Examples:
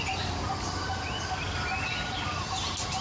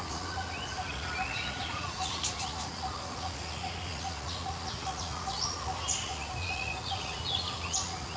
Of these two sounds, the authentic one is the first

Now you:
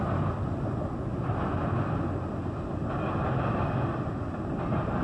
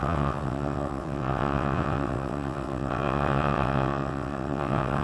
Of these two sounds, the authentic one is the first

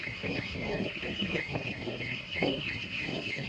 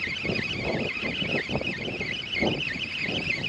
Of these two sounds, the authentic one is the second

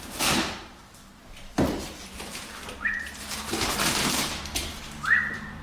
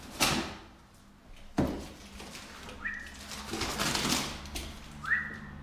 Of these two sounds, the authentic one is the second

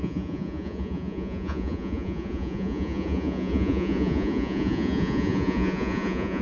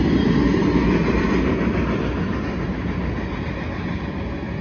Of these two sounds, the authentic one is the second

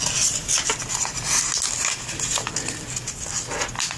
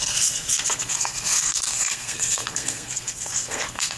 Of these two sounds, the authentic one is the first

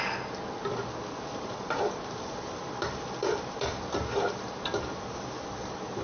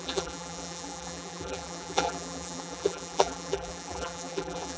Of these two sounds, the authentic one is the first